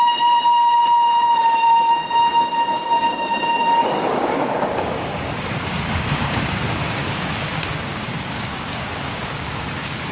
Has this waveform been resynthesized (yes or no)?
yes